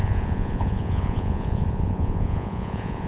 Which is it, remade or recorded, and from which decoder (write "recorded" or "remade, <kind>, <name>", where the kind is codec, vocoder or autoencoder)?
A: remade, vocoder, Vocos